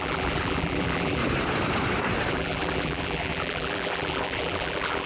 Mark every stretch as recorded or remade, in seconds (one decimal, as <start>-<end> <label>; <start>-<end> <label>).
0.0-1.2 remade; 1.2-2.3 recorded; 2.3-5.1 remade